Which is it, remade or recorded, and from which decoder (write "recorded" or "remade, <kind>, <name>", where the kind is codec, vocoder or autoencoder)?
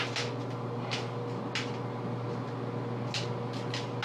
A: recorded